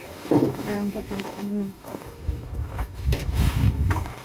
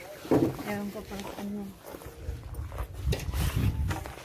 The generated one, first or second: first